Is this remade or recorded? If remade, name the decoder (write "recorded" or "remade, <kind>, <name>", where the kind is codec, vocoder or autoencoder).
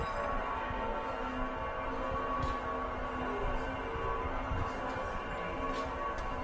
recorded